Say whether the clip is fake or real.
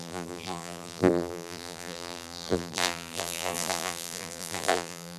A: fake